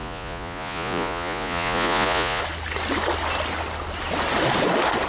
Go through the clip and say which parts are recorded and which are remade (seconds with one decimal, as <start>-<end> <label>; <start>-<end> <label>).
0.0-2.4 remade; 2.4-5.1 recorded